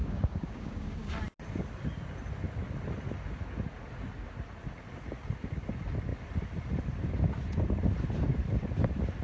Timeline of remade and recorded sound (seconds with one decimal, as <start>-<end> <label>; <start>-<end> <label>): 0.0-1.1 remade; 1.1-9.2 recorded